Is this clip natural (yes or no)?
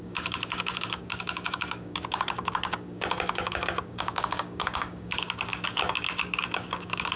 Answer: no